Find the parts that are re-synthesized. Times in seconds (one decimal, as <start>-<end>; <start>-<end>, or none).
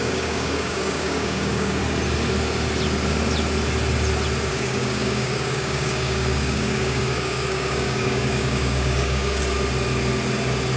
0.0-1.8; 4.5-9.4